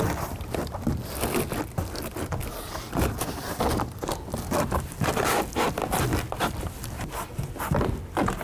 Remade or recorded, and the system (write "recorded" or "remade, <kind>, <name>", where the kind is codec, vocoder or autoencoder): remade, vocoder, BigVGAN v2